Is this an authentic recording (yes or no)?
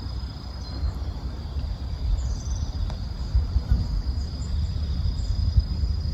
yes